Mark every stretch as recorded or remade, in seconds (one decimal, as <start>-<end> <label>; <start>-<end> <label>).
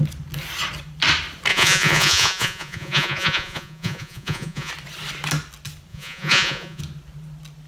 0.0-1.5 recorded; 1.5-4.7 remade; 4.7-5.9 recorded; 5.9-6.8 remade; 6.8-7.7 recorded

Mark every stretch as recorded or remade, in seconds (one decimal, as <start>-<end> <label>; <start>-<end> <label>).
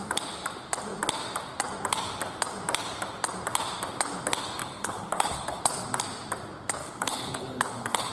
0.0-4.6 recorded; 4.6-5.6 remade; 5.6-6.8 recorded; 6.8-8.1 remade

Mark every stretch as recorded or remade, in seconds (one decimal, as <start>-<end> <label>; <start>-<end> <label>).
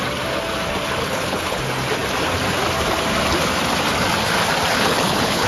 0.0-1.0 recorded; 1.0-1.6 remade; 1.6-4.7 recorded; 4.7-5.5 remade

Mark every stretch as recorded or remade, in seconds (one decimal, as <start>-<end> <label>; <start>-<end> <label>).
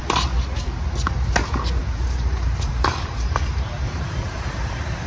0.0-1.8 recorded; 1.8-5.1 remade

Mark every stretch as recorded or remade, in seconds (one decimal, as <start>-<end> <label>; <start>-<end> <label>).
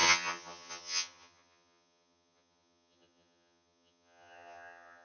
0.0-5.0 remade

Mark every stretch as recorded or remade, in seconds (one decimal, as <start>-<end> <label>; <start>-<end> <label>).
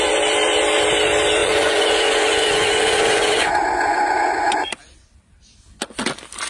0.0-1.4 recorded; 1.4-4.7 remade; 4.7-6.5 recorded